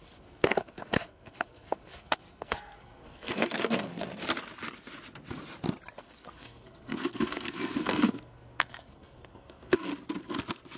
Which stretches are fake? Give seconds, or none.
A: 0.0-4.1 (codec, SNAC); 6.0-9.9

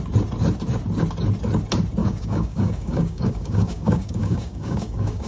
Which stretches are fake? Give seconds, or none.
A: 2.0-5.3 (codec, DAC)